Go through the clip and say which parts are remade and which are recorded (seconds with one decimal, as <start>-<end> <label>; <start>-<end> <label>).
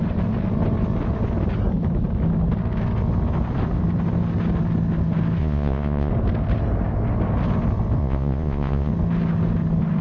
0.0-5.4 recorded; 5.4-6.1 remade; 6.1-8.0 recorded; 8.0-8.9 remade; 8.9-10.0 recorded